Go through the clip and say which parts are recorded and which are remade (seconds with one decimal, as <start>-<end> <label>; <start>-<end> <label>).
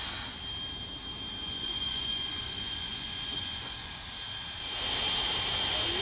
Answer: 0.0-1.4 recorded; 1.4-3.9 remade; 3.9-6.0 recorded